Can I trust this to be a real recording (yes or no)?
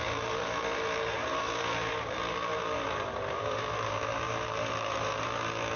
no